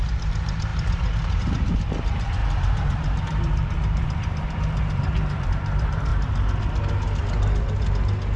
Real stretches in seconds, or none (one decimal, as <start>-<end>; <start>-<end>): 6.1-8.4